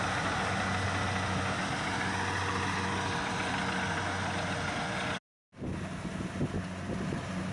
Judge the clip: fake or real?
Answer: real